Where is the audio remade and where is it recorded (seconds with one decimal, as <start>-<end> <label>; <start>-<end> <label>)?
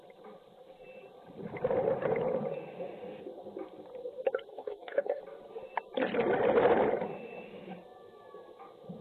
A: 0.0-4.5 recorded; 4.5-5.2 remade; 5.2-9.0 recorded